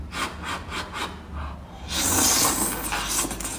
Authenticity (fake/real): real